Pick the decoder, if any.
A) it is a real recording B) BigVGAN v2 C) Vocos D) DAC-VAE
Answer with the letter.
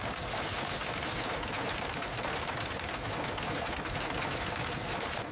A